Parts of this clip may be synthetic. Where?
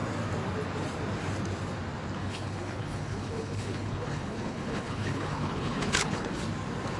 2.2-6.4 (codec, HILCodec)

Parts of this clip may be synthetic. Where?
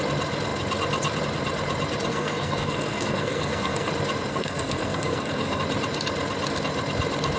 2.1-3.9 (codec, SNAC); 4.3-5.6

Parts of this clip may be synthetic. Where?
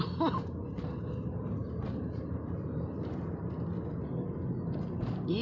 1.6-3.4 (vocoder, BigVGAN v2)